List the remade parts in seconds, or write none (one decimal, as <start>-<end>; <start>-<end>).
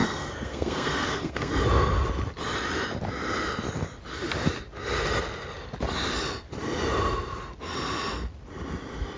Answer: 0.0-1.5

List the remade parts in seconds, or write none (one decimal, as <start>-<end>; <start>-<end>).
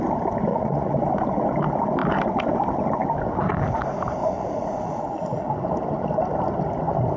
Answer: 0.5-1.0; 4.2-5.5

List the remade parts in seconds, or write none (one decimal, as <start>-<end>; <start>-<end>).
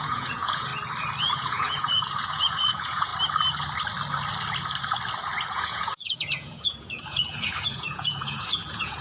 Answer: 0.0-0.7; 1.2-3.1; 5.5-9.0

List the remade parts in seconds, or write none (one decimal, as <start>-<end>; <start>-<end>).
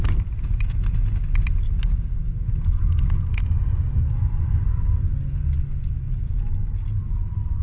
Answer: 3.3-4.0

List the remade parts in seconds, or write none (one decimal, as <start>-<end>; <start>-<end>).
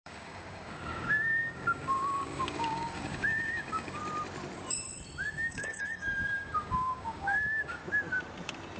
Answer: 0.0-4.0; 5.3-7.8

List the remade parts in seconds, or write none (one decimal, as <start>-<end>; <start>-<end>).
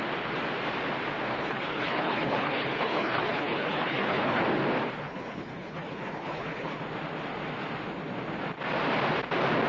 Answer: 1.3-4.4; 5.0-6.8